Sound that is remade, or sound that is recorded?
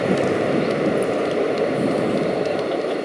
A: recorded